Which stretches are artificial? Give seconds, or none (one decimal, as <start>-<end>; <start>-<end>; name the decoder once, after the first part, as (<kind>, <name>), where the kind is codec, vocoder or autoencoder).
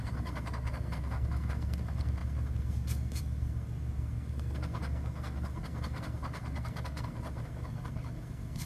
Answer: 0.0-8.7 (codec, SNAC)